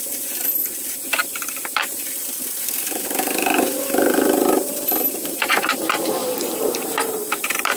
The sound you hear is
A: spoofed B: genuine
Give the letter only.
A